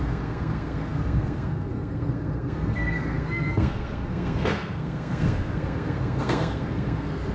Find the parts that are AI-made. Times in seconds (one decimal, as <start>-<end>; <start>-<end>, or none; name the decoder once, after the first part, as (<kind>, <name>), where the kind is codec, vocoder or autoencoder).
0.0-7.3 (codec, SNAC)